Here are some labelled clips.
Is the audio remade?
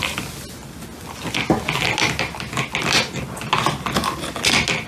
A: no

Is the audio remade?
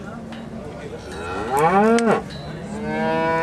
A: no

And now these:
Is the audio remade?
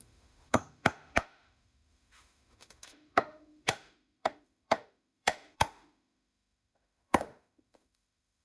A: yes